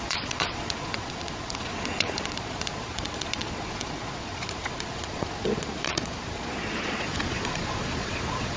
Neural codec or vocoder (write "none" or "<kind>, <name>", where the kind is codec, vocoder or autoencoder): vocoder, Vocos